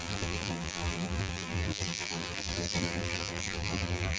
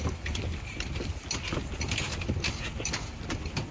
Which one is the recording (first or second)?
second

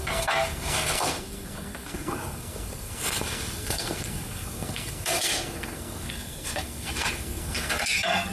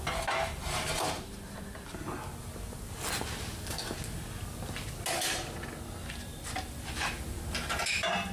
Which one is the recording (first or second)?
second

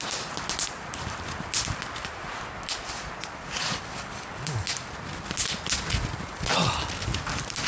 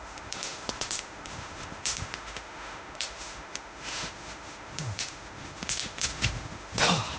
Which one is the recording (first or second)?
first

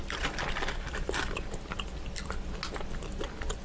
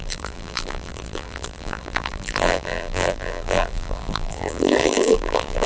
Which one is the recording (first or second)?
first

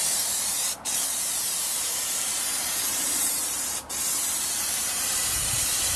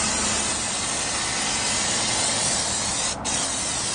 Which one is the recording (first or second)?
second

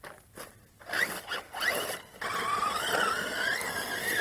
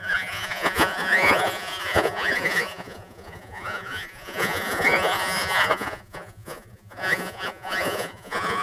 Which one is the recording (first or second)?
first